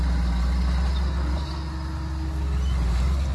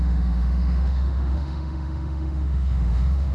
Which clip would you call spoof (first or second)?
second